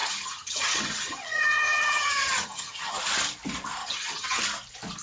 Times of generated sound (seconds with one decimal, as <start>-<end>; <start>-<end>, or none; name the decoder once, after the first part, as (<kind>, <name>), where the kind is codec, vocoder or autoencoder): 0.0-3.0 (vocoder, HiFi-GAN); 3.8-4.4